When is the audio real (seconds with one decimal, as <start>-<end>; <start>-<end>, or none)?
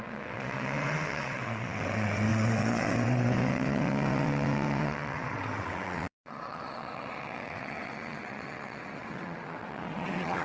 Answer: none